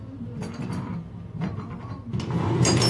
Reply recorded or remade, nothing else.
recorded